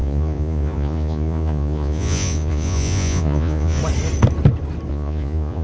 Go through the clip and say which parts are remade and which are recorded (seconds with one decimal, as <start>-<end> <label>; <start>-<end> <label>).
0.0-3.8 remade; 3.8-4.9 recorded; 4.9-5.6 remade